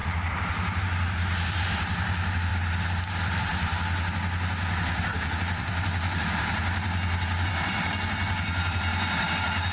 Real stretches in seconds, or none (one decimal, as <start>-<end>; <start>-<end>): 3.7-5.0